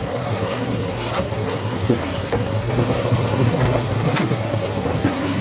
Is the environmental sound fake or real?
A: fake